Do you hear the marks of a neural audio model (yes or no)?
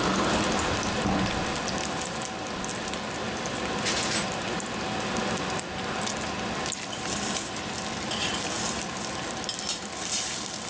no